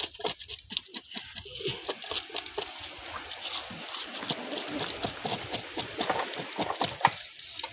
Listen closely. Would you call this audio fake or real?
real